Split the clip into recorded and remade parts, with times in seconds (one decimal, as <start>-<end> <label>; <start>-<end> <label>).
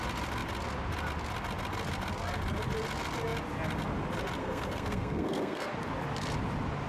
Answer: 0.0-4.4 recorded; 4.4-5.7 remade; 5.7-6.9 recorded